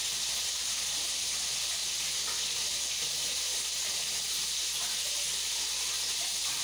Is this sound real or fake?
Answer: real